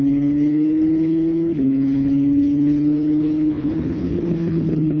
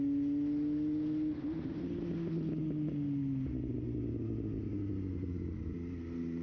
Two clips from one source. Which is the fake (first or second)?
first